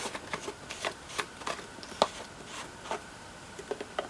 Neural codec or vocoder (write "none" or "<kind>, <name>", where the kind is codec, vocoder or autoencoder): none